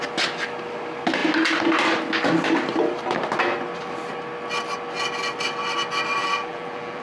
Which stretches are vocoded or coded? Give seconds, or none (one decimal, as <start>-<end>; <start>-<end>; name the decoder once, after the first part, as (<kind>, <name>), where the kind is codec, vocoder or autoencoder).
6.2-7.0 (vocoder, BigVGAN v2)

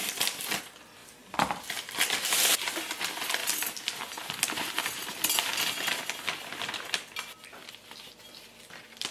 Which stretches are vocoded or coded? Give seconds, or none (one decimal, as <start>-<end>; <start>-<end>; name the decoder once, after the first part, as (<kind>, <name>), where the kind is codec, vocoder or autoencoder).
0.0-0.6 (vocoder, BigVGAN v2); 1.0-1.7; 3.4-4.3

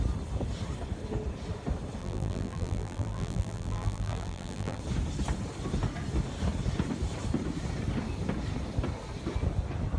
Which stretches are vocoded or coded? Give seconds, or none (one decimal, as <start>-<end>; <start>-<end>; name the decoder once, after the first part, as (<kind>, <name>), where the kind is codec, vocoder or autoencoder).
2.0-4.8 (vocoder, BigVGAN v2)

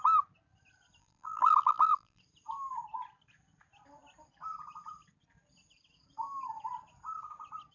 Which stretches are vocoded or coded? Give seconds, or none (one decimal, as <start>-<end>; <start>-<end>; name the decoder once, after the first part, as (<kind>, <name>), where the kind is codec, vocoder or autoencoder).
1.0-2.2 (vocoder, BigVGAN v2)